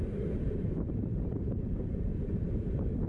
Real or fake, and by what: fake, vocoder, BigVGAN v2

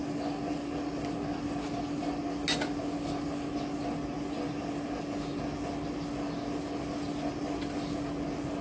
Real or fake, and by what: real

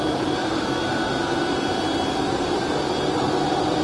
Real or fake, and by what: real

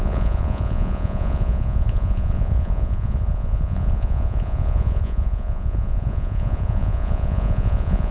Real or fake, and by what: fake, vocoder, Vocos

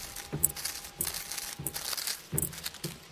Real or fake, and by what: real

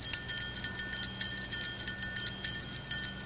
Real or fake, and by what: real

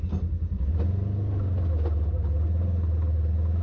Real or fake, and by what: real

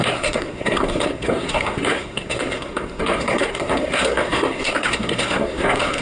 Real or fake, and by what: fake, codec, SNAC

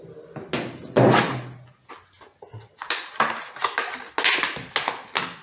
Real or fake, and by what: real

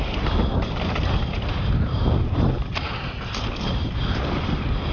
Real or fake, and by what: real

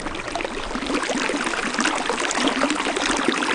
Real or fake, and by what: real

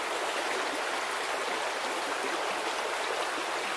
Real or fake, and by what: real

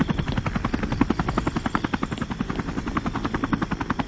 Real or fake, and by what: real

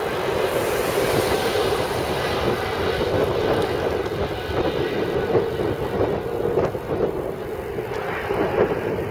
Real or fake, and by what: real